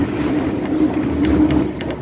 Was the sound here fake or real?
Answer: real